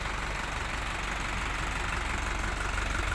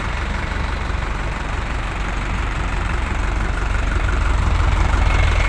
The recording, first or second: first